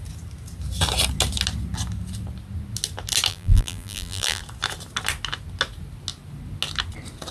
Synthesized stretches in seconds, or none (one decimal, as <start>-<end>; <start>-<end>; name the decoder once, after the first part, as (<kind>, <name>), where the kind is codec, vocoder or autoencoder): 3.3-4.4 (vocoder, BigVGAN v2)